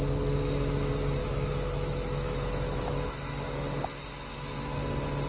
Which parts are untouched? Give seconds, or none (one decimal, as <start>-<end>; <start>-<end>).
0.0-1.2; 2.9-5.3